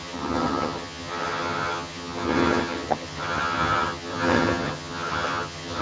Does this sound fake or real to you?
fake